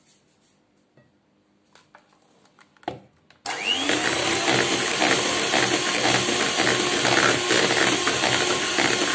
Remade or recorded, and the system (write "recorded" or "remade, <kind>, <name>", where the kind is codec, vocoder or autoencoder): recorded